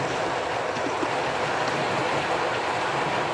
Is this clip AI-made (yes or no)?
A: no